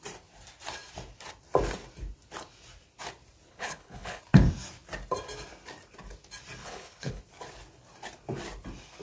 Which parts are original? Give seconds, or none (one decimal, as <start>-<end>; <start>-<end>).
0.0-3.5; 4.2-6.6; 7.2-9.0